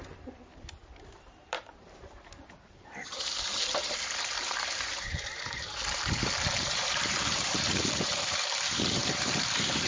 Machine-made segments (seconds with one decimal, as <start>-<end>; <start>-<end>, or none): 0.0-9.9